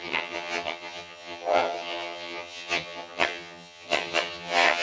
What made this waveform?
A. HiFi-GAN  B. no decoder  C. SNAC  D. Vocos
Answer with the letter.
A